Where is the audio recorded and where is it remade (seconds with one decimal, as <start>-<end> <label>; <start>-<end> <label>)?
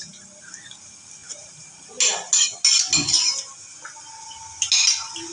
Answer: 0.0-5.3 recorded